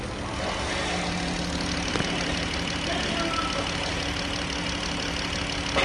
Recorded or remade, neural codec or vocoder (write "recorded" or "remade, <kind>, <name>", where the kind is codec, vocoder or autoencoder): recorded